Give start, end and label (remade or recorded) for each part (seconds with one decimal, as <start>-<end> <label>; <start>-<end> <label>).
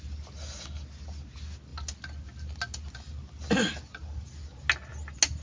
0.0-5.4 recorded